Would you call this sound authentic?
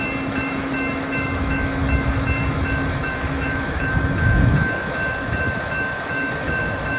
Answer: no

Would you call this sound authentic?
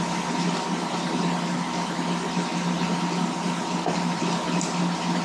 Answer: yes